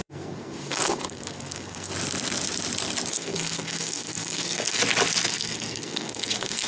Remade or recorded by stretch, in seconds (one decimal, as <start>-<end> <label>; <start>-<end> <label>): 0.0-1.9 remade; 1.9-3.1 recorded; 3.1-4.8 remade; 4.8-5.3 recorded; 5.3-6.7 remade